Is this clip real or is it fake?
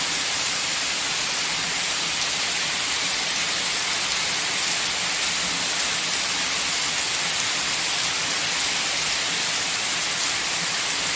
real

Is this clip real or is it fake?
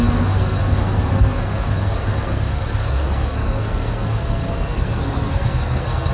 fake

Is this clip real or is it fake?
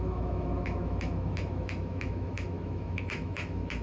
fake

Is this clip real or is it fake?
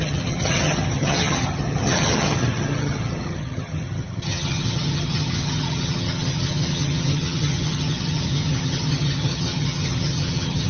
fake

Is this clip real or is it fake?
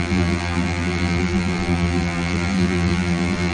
fake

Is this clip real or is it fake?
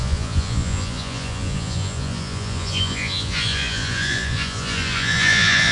fake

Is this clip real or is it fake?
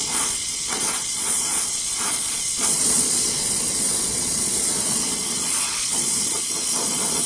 fake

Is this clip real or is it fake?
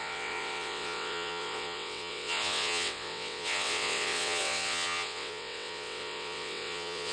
fake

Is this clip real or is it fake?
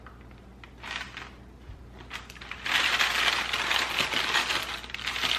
real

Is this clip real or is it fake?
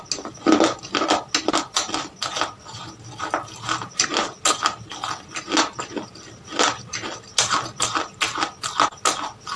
real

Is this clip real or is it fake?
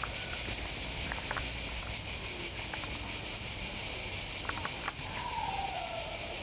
real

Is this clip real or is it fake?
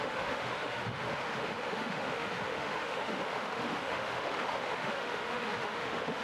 fake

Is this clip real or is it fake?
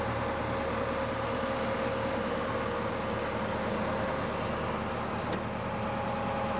real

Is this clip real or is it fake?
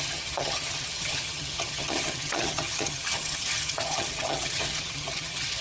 fake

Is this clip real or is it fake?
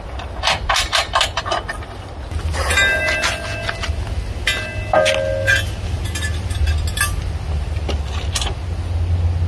real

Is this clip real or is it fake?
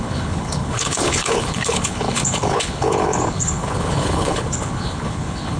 fake